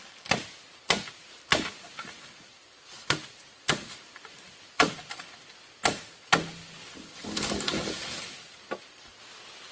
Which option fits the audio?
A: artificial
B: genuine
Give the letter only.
B